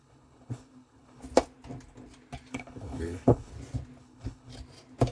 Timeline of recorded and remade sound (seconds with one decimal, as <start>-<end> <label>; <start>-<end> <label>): 0.0-1.2 remade; 1.2-2.5 recorded; 2.5-3.5 remade; 3.5-4.0 recorded; 4.0-4.5 remade; 4.5-5.1 recorded